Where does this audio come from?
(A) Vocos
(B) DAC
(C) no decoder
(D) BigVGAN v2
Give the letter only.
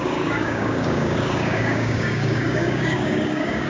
B